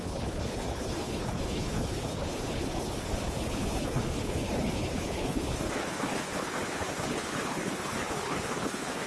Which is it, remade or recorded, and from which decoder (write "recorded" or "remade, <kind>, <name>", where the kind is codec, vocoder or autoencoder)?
remade, codec, HILCodec